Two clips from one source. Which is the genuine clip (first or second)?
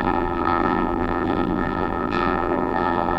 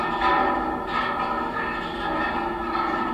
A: second